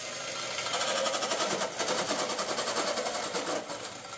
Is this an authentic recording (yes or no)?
yes